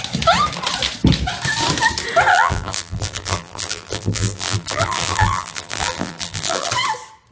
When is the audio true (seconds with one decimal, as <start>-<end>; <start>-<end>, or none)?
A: 0.0-2.3; 6.7-7.3